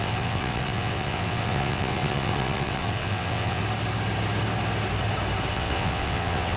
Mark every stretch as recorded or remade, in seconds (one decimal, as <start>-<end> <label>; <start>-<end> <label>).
0.0-3.6 remade; 3.6-5.5 recorded; 5.5-6.6 remade